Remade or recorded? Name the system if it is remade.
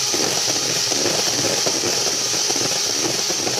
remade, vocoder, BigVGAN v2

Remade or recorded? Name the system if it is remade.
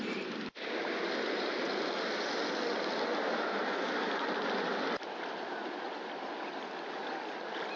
recorded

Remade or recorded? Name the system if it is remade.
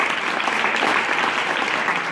remade, vocoder, BigVGAN v2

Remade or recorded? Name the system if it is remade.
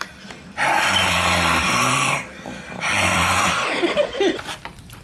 remade, vocoder, BigVGAN v2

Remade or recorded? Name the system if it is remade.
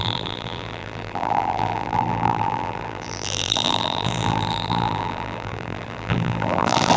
remade, vocoder, BigVGAN v2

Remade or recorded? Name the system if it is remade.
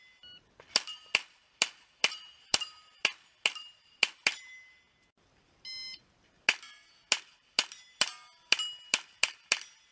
recorded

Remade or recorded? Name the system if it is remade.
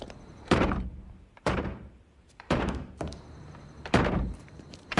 remade, vocoder, BigVGAN v2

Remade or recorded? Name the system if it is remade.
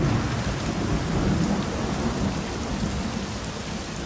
remade, vocoder, BigVGAN v2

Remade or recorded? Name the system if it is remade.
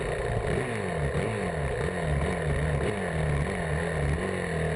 recorded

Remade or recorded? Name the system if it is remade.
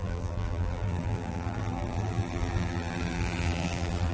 remade, vocoder, BigVGAN v2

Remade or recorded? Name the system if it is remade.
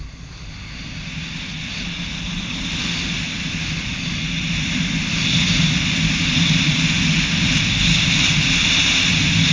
recorded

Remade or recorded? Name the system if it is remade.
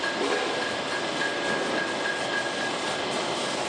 recorded